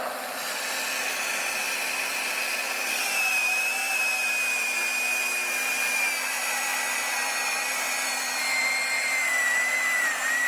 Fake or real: fake